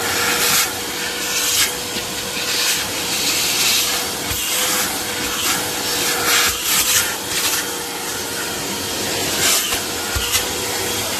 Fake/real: real